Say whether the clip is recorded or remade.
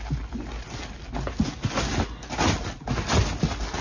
recorded